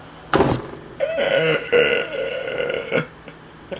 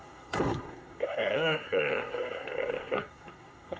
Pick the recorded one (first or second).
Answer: first